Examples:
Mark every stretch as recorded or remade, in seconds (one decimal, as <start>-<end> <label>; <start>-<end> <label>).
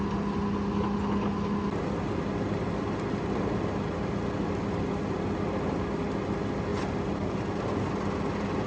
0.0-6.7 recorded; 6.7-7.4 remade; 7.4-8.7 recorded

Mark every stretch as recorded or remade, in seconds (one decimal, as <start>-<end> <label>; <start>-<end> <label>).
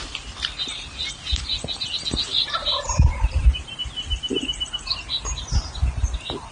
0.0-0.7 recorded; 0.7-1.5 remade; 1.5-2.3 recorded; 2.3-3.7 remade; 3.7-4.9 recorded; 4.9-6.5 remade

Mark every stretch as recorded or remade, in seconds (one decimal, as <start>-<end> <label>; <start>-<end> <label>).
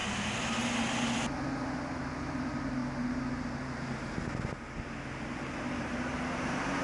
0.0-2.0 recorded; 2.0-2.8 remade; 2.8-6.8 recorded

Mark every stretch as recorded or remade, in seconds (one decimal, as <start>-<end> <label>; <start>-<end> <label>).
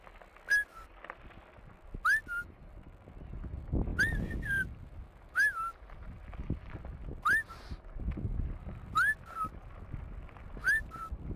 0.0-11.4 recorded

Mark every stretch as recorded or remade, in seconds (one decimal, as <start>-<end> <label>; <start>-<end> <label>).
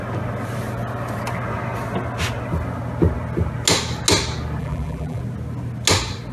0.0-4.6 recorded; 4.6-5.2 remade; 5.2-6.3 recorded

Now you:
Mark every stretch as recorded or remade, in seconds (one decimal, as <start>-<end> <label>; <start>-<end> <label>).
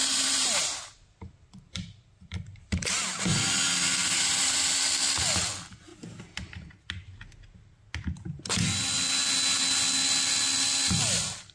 0.0-3.0 remade; 3.0-4.0 recorded; 4.0-4.8 remade; 4.8-11.5 recorded